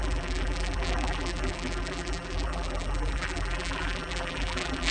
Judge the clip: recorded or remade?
remade